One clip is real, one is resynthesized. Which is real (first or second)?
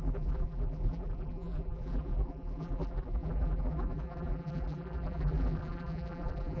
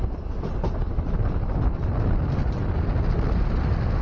second